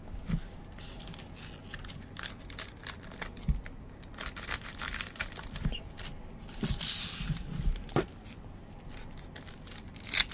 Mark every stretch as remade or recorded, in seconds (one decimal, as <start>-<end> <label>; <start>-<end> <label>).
0.0-10.3 recorded